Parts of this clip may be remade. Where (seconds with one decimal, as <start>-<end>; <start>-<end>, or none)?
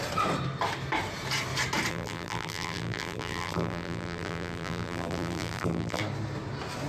1.9-6.0